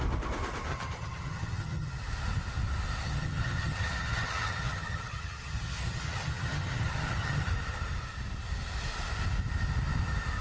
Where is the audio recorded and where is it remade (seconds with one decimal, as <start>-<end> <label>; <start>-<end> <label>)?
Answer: 0.0-0.7 recorded; 0.7-2.0 remade; 2.0-3.0 recorded; 3.0-7.5 remade; 7.5-10.4 recorded